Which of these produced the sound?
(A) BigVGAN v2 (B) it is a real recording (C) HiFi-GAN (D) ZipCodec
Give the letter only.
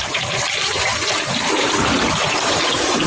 A